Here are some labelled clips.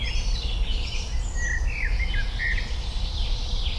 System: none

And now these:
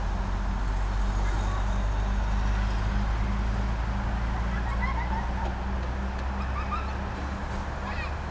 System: none